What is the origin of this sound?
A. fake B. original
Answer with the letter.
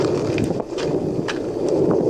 B